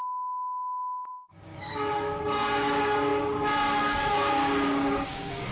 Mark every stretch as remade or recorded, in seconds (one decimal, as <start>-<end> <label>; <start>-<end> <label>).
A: 0.0-5.5 remade